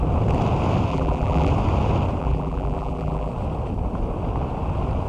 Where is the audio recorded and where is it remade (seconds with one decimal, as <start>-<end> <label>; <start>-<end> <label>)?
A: 0.0-0.9 recorded; 0.9-1.5 remade; 1.5-2.2 recorded; 2.2-3.3 remade; 3.3-5.1 recorded